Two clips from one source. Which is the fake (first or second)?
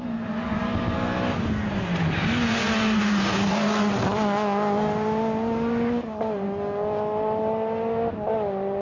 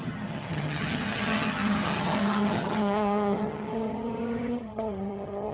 second